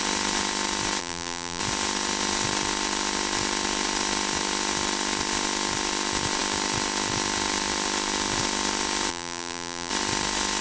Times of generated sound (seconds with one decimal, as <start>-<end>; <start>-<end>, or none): 1.0-1.6; 9.1-9.9